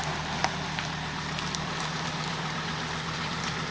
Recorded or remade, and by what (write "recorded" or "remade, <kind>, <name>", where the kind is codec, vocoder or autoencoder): recorded